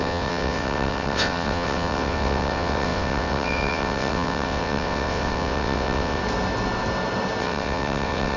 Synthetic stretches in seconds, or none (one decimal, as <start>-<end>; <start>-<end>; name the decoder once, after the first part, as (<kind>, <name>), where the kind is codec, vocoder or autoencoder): 0.0-6.2 (vocoder, WaveNeXt); 7.4-8.4